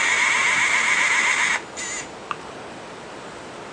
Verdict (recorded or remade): recorded